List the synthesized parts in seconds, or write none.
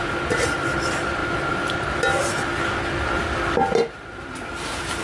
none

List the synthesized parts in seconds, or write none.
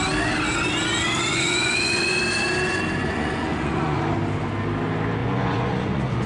1.3-2.2 (vocoder, Vocos); 3.0-4.0; 5.2-6.3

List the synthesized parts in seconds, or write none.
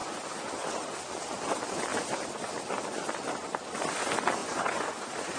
4.4-5.0 (vocoder, Vocos)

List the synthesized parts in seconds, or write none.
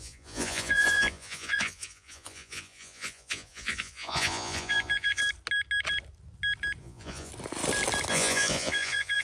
0.0-5.2 (vocoder, Vocos); 6.8-7.3; 8.1-9.2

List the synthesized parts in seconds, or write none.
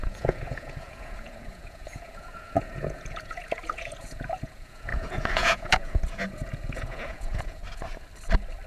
0.0-7.6 (vocoder, Vocos)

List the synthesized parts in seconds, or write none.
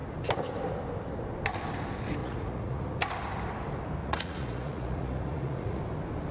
2.2-2.9 (vocoder, Vocos); 4.0-5.8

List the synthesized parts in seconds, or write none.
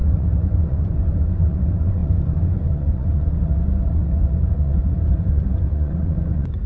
0.0-6.7 (vocoder, Vocos)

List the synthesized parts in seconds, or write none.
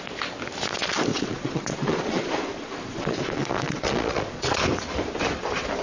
1.1-4.6 (vocoder, Vocos)